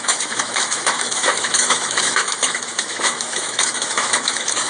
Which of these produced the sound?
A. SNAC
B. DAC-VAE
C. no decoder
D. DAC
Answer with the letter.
B